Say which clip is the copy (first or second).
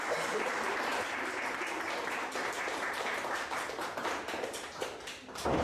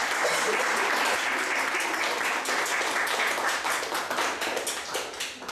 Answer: first